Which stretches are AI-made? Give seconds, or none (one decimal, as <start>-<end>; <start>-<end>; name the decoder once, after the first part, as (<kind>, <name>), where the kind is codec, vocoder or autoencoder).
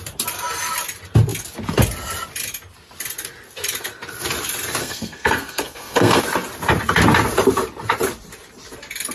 4.8-6.2 (codec, SNAC)